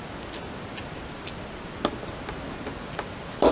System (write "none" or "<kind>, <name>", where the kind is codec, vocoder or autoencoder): none